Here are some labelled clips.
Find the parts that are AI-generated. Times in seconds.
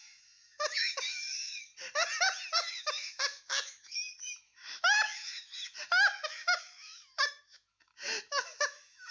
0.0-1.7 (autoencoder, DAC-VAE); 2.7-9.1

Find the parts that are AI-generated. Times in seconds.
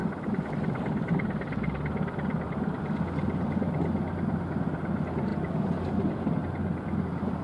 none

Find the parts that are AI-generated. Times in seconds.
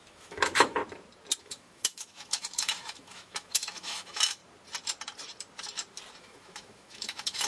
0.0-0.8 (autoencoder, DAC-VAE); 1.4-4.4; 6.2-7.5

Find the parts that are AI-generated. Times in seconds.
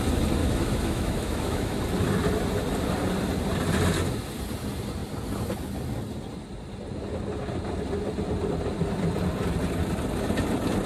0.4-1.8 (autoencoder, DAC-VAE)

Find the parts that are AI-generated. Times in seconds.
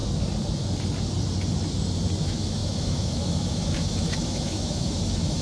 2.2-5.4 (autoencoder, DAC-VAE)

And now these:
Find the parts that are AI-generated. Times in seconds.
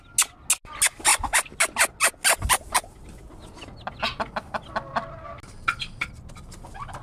none